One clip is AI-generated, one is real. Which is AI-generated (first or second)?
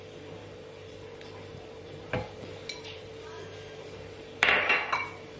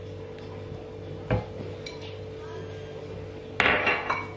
first